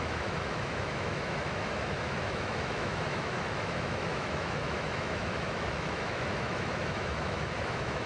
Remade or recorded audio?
remade